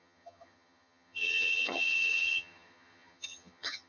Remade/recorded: remade